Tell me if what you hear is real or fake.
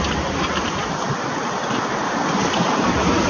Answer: real